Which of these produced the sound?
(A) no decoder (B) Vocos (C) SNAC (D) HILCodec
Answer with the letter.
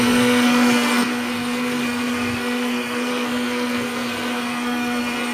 C